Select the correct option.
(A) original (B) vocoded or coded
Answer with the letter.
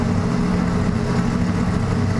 A